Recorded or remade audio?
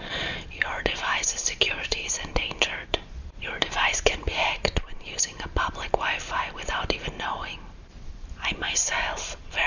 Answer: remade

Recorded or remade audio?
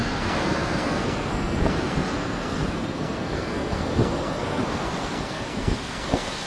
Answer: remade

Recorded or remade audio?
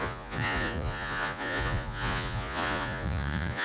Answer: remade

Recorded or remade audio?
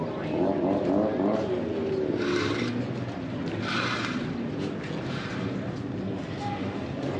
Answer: recorded